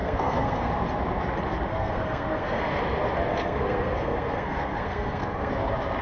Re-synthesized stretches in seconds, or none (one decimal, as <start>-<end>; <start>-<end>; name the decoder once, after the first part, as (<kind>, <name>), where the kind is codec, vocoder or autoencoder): 0.0-0.7 (codec, SNAC); 1.7-2.6; 3.3-5.5